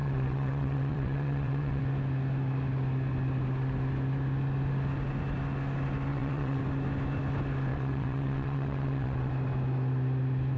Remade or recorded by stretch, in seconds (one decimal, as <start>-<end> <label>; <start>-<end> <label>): 0.0-1.8 remade; 1.8-6.1 recorded; 6.1-6.6 remade; 6.6-7.7 recorded; 7.7-9.3 remade; 9.3-10.6 recorded